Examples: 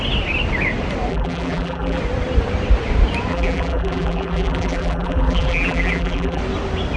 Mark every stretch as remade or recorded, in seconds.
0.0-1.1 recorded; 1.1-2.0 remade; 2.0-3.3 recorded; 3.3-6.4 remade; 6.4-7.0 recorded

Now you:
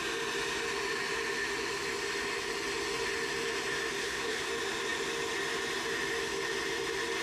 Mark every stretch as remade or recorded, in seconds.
0.0-4.0 recorded; 4.0-4.5 remade; 4.5-7.2 recorded

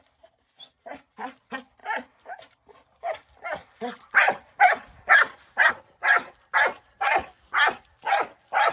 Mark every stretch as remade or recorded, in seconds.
0.0-1.8 recorded; 1.8-5.7 remade; 5.7-8.7 recorded

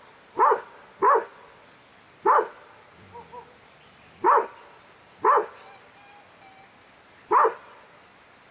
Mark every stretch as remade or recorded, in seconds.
0.0-8.5 recorded